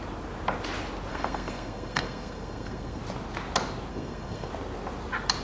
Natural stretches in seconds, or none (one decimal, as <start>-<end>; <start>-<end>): 0.0-1.1; 3.0-3.9; 4.5-5.4